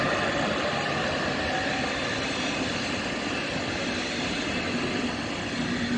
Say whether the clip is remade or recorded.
recorded